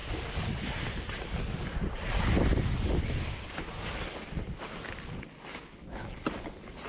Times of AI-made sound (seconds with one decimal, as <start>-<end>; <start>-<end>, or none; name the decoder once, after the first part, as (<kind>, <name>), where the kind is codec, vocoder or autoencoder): none